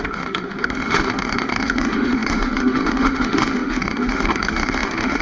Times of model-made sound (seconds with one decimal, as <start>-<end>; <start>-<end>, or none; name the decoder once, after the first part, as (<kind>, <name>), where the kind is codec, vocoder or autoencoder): 0.0-5.2 (autoencoder, DAC-VAE)